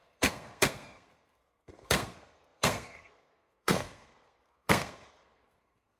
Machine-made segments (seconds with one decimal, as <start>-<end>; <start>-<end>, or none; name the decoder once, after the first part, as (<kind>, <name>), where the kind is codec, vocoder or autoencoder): 0.0-6.0 (codec, SNAC)